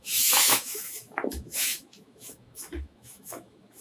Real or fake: fake